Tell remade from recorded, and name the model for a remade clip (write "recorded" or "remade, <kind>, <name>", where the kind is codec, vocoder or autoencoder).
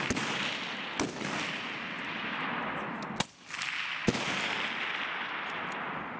recorded